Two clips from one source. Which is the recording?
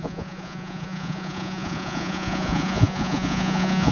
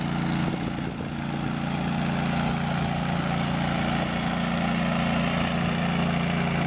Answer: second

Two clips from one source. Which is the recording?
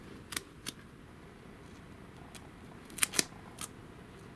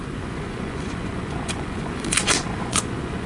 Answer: first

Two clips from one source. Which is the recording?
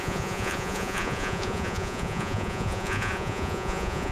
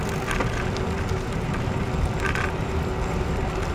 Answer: second